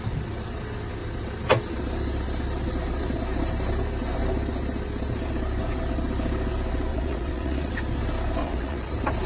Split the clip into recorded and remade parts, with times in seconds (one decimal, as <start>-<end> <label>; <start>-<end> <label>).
0.0-6.9 recorded; 6.9-7.7 remade; 7.7-8.4 recorded; 8.4-8.9 remade; 8.9-9.3 recorded